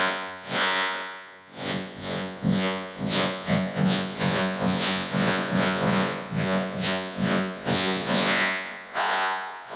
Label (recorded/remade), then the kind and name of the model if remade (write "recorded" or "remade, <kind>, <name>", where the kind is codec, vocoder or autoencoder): remade, vocoder, Vocos